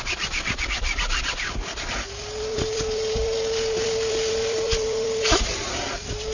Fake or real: fake